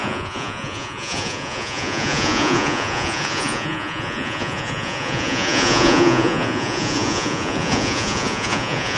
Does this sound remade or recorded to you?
remade